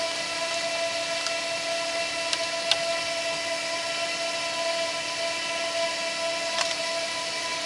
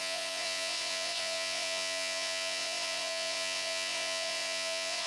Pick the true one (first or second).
first